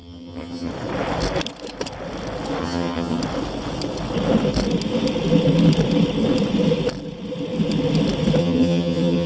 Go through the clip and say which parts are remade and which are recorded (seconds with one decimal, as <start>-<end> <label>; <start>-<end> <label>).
0.0-0.7 remade; 0.7-2.6 recorded; 2.6-3.2 remade; 3.2-8.4 recorded; 8.4-9.3 remade